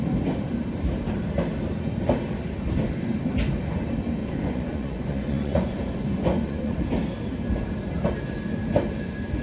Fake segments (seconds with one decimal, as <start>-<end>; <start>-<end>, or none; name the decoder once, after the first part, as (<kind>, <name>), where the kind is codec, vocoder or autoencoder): 4.2-6.7 (vocoder, Vocos)